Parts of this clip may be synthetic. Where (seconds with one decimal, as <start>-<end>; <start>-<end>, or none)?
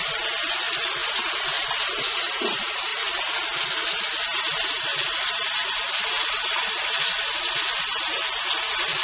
0.0-1.0; 2.0-9.0